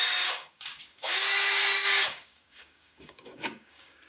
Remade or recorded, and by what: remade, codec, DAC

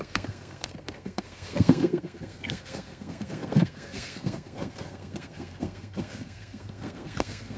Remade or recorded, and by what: remade, codec, SNAC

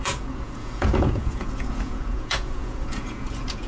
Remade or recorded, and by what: remade, vocoder, Vocos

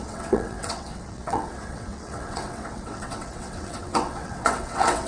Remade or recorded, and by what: remade, vocoder, WaveNeXt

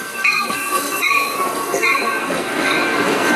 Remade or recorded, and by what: remade, codec, SNAC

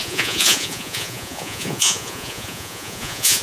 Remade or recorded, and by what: remade, vocoder, Vocos